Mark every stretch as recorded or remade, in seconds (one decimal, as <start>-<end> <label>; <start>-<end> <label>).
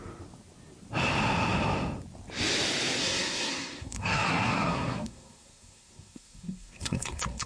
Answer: 0.0-3.0 recorded; 3.0-7.5 remade